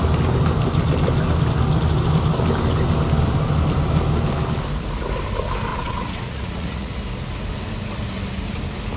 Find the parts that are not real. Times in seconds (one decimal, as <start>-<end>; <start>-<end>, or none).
5.7-7.0